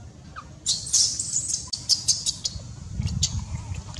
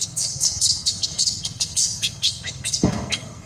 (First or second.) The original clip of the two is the first